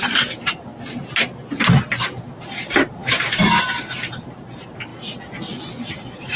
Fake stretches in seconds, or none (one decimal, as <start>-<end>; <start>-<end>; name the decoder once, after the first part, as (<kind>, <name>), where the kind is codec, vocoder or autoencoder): 0.0-0.7 (vocoder, BigVGAN v2); 2.2-4.9; 5.9-6.4